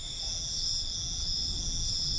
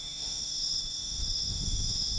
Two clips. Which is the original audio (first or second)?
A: first